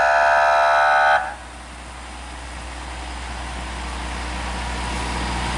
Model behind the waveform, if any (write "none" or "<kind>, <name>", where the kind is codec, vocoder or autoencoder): none